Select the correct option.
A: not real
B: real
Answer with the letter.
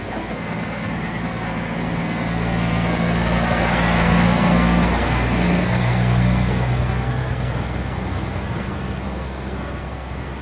A